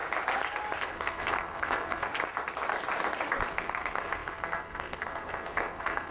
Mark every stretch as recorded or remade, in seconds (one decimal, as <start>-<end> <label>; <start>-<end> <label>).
0.0-0.9 recorded; 0.9-2.1 remade; 2.1-3.5 recorded; 3.5-6.1 remade